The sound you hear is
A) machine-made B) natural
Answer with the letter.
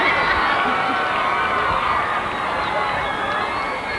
B